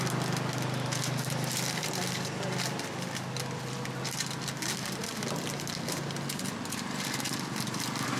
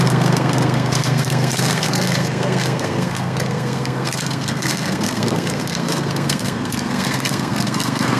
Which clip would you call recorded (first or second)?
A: first